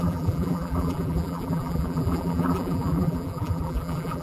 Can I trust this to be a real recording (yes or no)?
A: no